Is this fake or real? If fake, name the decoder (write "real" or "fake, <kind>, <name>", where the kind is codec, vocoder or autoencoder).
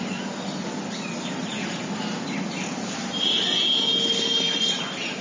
real